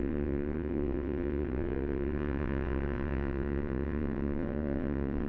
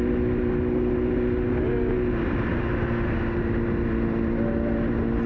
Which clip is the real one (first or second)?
second